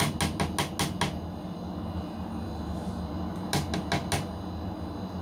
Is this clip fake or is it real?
real